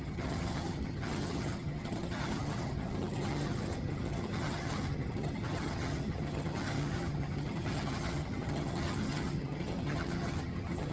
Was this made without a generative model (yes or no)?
no